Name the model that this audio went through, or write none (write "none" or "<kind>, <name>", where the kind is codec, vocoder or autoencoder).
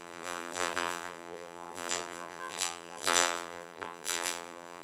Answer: vocoder, BigVGAN v2